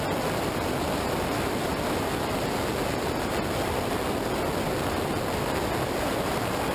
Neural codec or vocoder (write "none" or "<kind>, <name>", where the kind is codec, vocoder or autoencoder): none